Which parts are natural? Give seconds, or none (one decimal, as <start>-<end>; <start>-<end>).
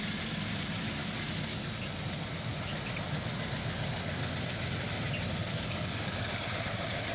0.0-1.0; 1.7-5.4; 6.5-7.1